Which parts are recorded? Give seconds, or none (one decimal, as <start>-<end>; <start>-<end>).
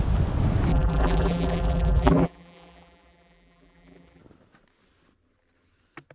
0.0-0.7; 4.2-6.1